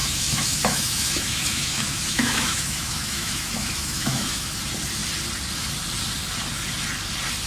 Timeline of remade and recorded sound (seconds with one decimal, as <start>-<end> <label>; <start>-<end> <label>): 0.0-4.5 remade; 4.5-7.5 recorded